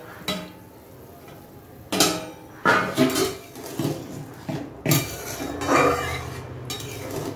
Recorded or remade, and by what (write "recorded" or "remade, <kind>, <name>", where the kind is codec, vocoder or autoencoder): recorded